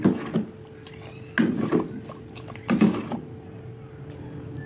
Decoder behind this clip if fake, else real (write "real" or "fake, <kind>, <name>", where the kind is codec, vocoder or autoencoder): real